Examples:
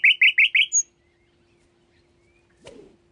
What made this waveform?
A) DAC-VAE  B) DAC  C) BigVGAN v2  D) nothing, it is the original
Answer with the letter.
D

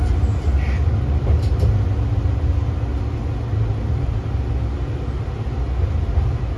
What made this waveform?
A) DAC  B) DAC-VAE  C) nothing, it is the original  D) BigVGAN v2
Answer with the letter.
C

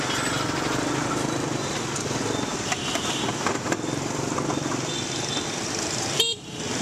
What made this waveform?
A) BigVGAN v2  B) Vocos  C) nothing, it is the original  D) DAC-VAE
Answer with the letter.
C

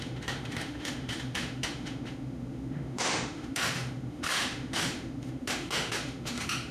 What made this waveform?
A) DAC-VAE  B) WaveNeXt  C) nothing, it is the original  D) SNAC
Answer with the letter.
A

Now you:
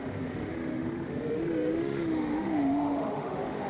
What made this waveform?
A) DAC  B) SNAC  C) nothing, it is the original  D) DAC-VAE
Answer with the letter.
D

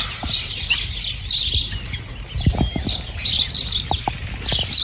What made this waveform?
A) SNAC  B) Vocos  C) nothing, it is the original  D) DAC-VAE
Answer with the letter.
C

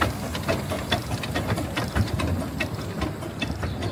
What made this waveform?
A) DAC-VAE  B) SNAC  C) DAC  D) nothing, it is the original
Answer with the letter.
D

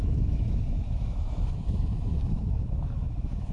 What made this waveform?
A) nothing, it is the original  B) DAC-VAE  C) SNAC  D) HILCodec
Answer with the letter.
B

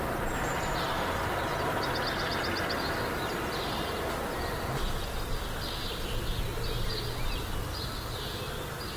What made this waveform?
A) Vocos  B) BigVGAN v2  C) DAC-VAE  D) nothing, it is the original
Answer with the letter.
D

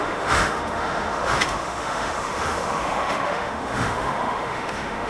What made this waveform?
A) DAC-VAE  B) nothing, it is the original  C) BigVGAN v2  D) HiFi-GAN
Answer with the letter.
A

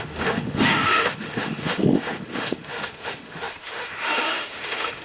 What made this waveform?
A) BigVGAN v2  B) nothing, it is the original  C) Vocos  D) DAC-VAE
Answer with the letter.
D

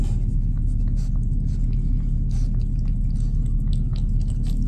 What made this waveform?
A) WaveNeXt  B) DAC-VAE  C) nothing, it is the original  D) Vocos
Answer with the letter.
C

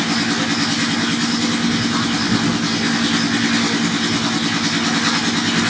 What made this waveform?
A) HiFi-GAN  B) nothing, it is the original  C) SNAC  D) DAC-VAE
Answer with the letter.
B